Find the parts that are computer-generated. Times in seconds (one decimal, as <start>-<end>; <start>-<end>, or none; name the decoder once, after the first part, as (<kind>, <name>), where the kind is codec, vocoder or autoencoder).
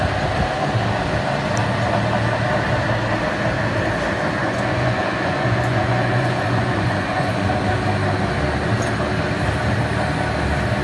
4.4-7.5 (vocoder, Vocos)